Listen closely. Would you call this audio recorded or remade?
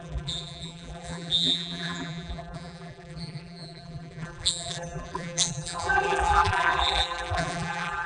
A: remade